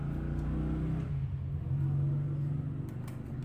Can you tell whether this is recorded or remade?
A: recorded